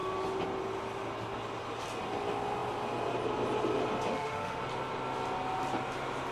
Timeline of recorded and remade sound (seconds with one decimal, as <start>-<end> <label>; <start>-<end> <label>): 0.0-4.1 recorded; 4.1-4.6 remade; 4.6-6.3 recorded